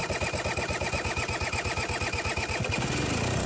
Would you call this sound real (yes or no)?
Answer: yes